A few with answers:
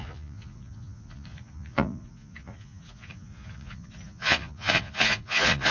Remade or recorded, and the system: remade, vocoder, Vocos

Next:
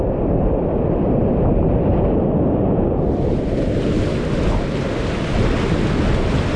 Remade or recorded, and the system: recorded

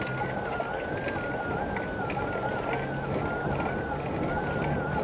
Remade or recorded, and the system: recorded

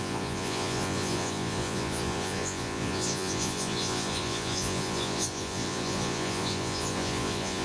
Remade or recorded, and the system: remade, vocoder, Vocos